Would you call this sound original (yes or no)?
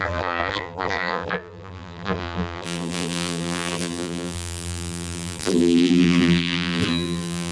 no